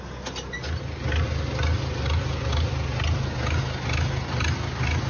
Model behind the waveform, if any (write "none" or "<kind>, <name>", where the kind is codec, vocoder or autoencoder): none